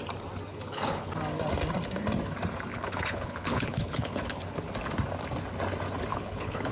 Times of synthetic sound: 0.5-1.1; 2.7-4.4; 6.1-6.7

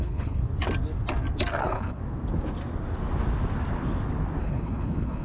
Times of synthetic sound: 0.0-0.4; 1.6-2.0; 4.4-5.2